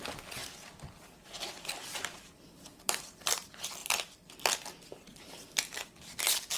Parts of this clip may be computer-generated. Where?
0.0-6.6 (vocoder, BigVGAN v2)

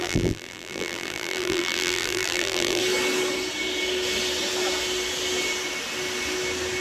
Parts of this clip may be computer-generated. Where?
0.0-2.8 (vocoder, BigVGAN v2)

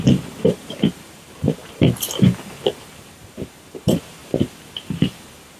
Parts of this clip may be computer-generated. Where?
0.0-5.6 (vocoder, BigVGAN v2)